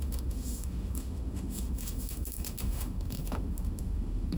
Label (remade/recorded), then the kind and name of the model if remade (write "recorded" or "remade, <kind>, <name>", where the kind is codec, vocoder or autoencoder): remade, autoencoder, DAC-VAE